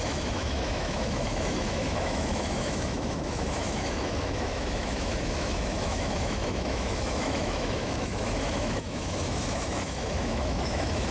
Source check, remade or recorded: remade